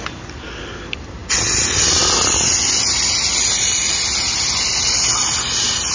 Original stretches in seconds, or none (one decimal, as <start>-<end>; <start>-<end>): 0.0-5.9